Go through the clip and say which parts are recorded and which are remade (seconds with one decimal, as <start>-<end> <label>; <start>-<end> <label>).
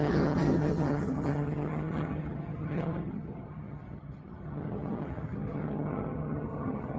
0.0-7.0 remade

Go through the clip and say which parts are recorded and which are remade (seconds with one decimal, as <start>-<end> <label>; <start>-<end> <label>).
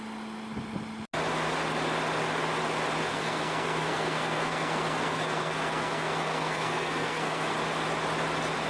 0.0-3.1 recorded; 3.1-7.5 remade; 7.5-8.7 recorded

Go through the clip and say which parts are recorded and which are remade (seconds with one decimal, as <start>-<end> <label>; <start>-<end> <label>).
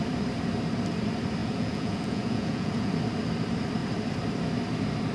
0.0-1.4 recorded; 1.4-2.9 remade; 2.9-5.1 recorded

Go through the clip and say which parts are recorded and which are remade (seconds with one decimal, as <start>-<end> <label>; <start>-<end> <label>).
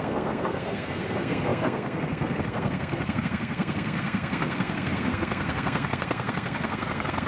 0.0-7.3 remade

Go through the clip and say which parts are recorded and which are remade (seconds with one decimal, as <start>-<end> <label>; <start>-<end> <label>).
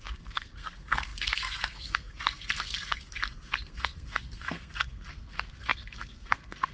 0.0-6.7 remade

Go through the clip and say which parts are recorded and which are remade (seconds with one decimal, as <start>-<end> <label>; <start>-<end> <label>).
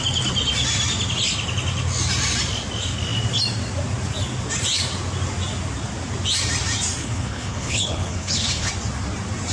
0.0-7.0 recorded; 7.0-8.7 remade; 8.7-9.5 recorded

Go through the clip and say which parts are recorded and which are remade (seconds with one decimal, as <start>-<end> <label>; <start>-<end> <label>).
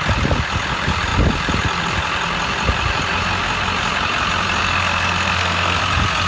0.0-4.6 recorded; 4.6-5.8 remade; 5.8-6.3 recorded